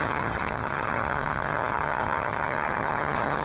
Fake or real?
fake